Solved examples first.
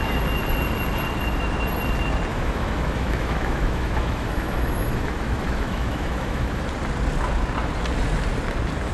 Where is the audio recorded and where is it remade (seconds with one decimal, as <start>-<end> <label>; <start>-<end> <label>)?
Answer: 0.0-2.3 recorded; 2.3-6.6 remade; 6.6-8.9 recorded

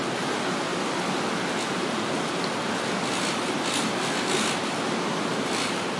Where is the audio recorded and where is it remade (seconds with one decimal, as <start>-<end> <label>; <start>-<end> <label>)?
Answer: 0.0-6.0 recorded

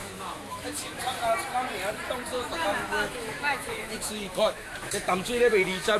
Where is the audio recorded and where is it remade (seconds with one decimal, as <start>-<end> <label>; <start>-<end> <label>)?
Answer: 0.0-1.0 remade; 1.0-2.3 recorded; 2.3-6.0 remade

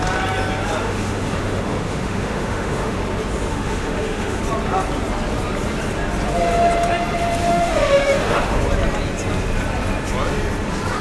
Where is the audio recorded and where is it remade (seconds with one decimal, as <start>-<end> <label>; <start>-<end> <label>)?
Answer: 0.0-0.8 recorded; 0.8-3.0 remade; 3.0-3.5 recorded; 3.5-4.4 remade; 4.4-7.4 recorded; 7.4-8.6 remade; 8.6-11.0 recorded

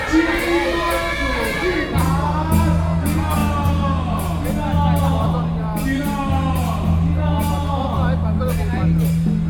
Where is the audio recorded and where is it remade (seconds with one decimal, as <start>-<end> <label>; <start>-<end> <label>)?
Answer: 0.0-9.5 recorded

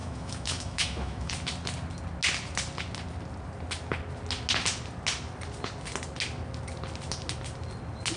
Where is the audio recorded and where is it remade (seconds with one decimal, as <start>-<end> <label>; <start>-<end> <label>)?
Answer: 0.0-1.3 remade; 1.3-8.2 recorded

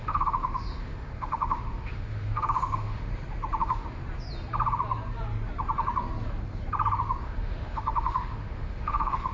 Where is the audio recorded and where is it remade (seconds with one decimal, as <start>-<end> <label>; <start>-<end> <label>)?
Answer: 0.0-3.1 remade; 3.1-3.6 recorded; 3.6-4.0 remade; 4.0-7.2 recorded; 7.2-9.3 remade